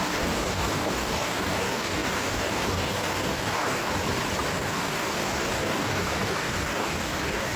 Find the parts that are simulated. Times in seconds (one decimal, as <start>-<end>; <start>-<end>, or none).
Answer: 0.0-3.9; 4.5-7.6